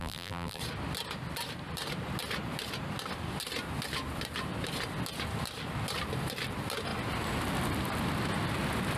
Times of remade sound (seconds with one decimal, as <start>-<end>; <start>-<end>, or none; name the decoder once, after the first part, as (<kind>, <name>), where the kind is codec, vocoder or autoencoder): 0.0-0.6 (vocoder, BigVGAN v2)